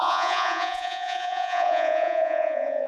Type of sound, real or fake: fake